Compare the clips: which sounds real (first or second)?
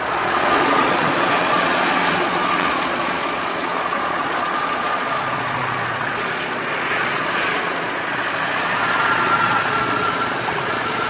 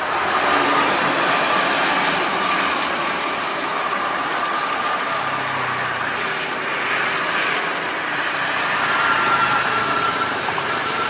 second